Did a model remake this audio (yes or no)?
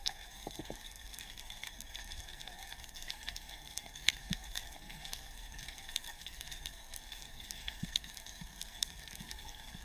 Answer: yes